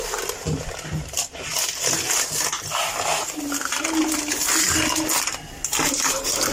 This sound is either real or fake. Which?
real